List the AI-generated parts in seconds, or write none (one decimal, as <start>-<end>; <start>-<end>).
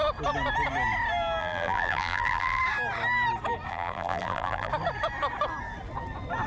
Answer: 1.4-2.6; 3.7-4.7